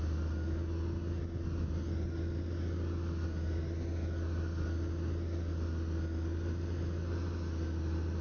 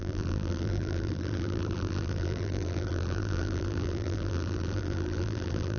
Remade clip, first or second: second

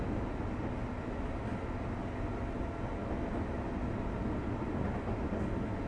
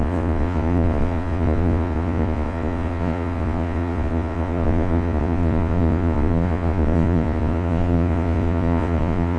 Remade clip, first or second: second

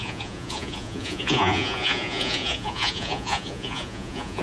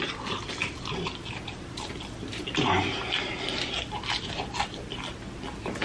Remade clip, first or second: first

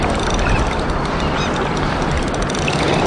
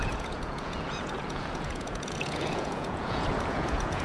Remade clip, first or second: second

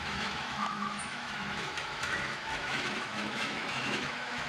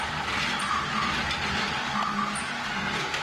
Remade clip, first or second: first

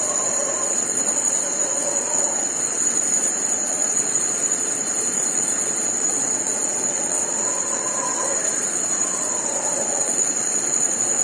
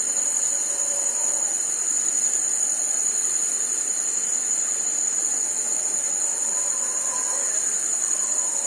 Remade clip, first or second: first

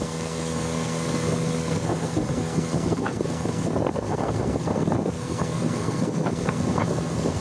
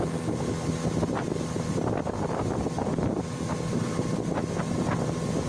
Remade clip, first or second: first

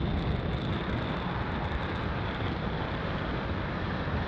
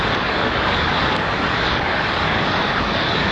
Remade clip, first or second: second